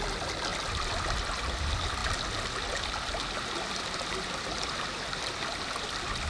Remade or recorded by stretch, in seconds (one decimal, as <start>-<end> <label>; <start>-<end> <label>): 0.0-0.5 remade; 0.5-1.6 recorded; 1.6-2.0 remade; 2.0-3.7 recorded; 3.7-6.3 remade